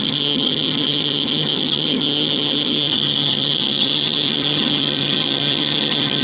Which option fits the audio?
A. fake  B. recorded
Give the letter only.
A